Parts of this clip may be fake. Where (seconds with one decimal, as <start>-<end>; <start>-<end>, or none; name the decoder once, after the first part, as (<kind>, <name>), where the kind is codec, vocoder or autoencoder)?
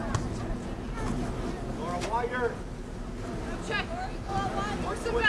0.4-1.0 (vocoder, Vocos)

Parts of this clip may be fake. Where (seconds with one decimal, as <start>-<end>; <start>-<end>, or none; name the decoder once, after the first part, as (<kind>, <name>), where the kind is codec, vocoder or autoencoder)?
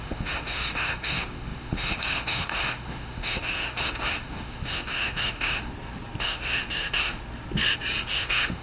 0.0-5.7 (autoencoder, DAC-VAE); 6.2-7.2; 8.1-8.6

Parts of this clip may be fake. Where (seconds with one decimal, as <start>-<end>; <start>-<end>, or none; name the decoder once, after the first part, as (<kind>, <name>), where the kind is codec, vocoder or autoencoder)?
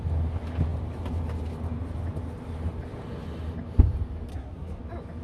4.3-4.8 (codec, SNAC)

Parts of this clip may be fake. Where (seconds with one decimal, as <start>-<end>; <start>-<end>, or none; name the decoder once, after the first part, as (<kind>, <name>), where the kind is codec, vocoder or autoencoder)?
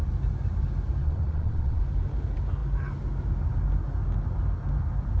1.0-1.8 (vocoder, WaveNeXt)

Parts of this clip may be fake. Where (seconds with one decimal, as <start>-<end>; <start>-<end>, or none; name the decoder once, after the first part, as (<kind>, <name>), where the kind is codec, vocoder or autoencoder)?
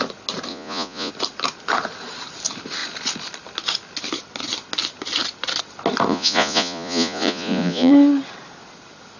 0.5-1.1 (vocoder, Vocos); 6.1-7.9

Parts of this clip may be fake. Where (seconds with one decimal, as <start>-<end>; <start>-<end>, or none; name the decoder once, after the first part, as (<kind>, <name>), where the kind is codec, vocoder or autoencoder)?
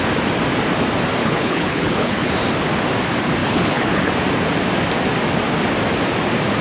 1.2-2.3 (codec, HILCodec); 3.4-4.1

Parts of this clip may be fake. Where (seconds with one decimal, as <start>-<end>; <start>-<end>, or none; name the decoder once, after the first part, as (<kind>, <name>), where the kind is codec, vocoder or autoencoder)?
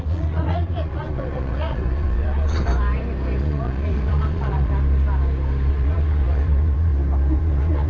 0.0-2.7 (vocoder, Vocos); 3.4-4.7; 5.7-6.9; 7.4-7.9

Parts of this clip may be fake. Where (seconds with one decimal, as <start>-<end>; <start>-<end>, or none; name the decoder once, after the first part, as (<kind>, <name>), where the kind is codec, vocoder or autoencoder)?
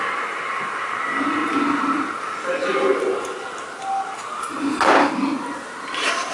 none